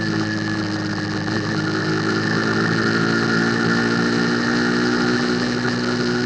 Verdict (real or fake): real